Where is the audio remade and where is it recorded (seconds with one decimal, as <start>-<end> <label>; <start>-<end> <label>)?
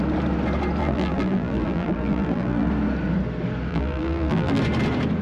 0.0-0.8 recorded; 0.8-2.7 remade; 2.7-3.7 recorded; 3.7-4.6 remade; 4.6-5.2 recorded